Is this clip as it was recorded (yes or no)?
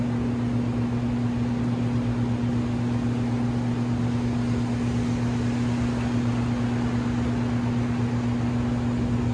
yes